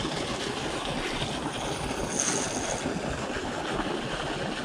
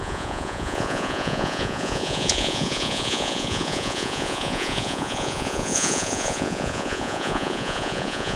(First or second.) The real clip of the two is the first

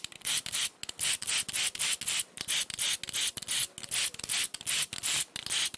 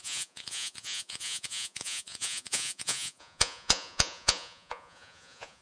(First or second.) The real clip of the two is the first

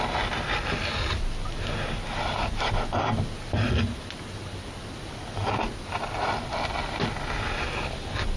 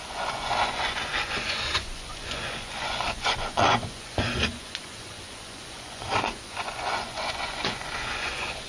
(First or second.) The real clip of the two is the first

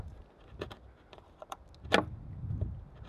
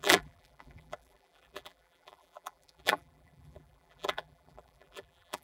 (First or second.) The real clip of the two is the first